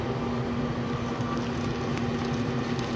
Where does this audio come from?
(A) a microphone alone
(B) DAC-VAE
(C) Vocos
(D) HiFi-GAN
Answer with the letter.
A